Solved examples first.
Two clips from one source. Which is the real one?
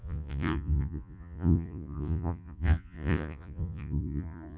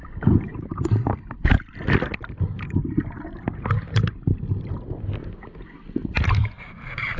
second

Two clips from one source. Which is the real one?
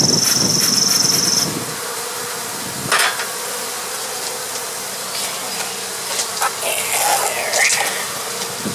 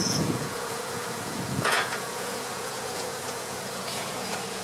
first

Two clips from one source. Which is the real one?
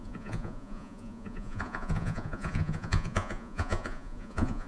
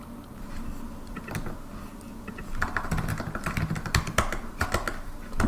second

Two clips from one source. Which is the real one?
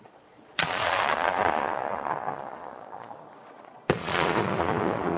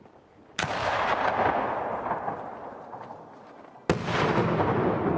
second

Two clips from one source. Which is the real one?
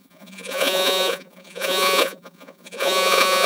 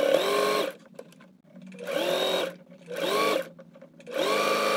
second